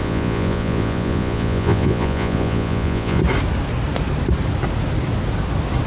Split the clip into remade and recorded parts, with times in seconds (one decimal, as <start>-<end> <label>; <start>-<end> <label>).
0.0-3.2 remade; 3.2-5.9 recorded